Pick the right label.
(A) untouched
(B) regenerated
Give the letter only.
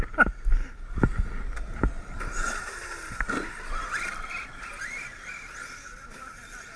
A